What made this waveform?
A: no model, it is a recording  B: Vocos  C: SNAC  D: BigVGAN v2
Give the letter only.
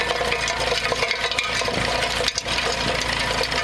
A